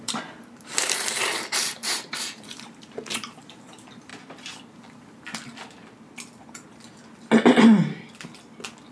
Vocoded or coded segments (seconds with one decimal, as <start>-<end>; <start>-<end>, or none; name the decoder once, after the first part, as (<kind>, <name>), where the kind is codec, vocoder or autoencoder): 0.0-4.1 (vocoder, BigVGAN v2)